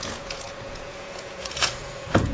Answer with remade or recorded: remade